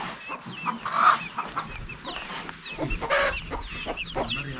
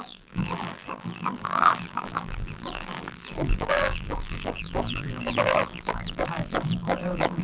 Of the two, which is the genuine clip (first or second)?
first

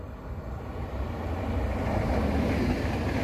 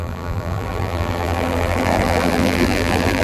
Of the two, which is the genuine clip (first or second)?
first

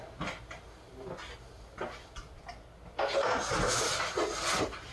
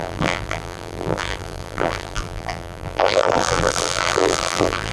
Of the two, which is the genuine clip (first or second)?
first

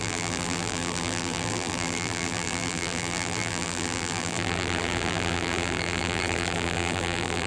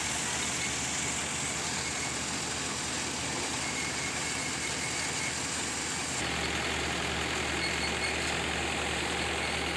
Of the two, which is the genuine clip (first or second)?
second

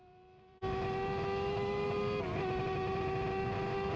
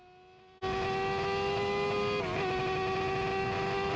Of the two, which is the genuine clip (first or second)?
second